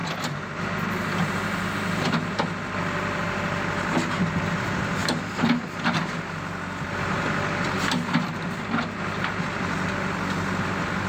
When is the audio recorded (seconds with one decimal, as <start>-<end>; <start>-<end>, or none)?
0.0-11.1